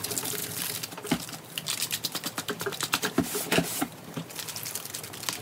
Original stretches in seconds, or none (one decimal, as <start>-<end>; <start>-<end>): 0.0-0.4; 3.1-5.4